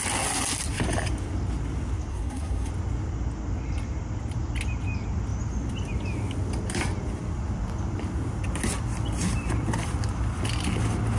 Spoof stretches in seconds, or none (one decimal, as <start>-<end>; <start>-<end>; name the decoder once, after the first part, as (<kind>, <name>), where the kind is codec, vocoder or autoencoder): 2.1-2.7 (codec, SNAC)